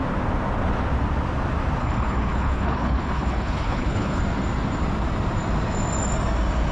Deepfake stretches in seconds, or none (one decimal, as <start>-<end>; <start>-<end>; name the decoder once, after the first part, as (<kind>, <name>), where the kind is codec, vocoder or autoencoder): 1.8-4.2 (codec, HILCodec)